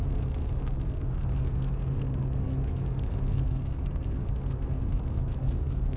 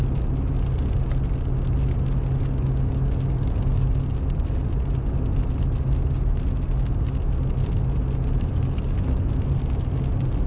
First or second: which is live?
second